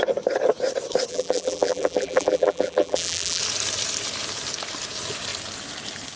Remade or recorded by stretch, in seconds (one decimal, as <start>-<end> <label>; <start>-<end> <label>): 0.0-1.1 recorded; 1.1-3.4 remade; 3.4-6.2 recorded